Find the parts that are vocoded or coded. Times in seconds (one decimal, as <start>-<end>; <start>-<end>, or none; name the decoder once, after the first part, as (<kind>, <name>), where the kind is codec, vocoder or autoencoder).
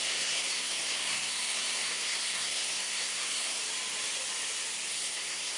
0.0-3.6 (codec, SNAC); 4.9-5.6